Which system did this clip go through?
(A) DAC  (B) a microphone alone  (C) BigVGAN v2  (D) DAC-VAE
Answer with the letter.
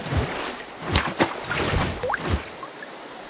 B